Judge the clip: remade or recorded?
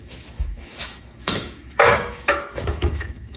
remade